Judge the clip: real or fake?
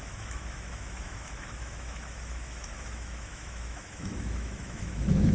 fake